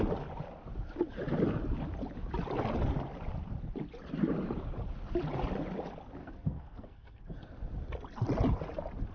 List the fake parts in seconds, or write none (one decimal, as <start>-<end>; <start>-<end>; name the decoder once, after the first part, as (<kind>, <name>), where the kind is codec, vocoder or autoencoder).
6.2-7.2 (codec, SNAC)